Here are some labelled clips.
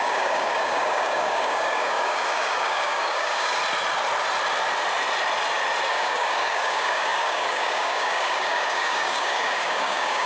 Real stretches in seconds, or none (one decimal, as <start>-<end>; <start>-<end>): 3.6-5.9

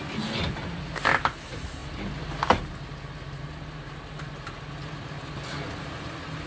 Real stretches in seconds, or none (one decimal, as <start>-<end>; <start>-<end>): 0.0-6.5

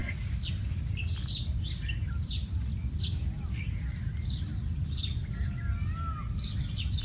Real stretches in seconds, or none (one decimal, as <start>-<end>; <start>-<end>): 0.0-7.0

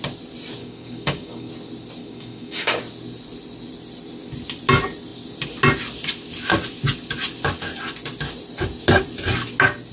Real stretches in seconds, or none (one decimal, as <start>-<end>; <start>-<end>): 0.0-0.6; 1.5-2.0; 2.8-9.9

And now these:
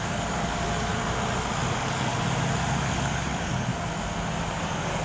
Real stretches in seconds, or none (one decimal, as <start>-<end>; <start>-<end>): 0.9-1.7; 2.1-2.7; 3.7-4.5

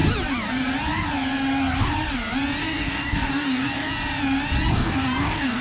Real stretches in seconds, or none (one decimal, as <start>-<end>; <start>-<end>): 0.0-2.6; 3.9-4.7